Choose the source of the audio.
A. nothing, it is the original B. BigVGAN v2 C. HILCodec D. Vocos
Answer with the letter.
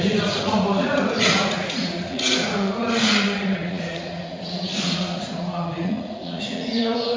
D